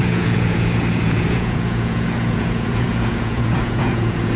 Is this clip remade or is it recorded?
remade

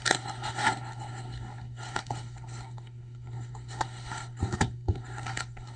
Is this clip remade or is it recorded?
remade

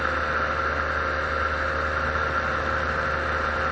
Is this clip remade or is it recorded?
recorded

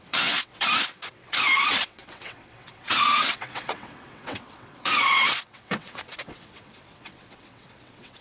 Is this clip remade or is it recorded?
remade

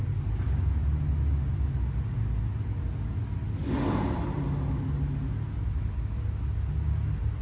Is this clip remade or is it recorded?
recorded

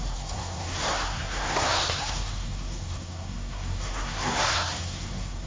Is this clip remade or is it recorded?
remade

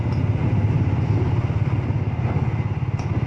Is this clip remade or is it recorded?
recorded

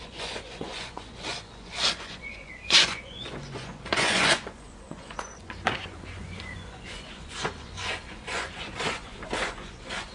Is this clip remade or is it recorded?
remade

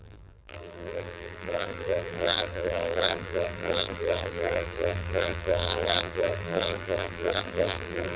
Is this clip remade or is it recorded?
remade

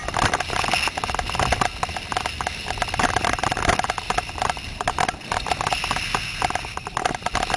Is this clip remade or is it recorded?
recorded